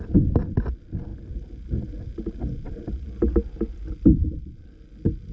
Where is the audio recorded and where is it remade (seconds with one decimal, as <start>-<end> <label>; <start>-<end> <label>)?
0.0-5.3 recorded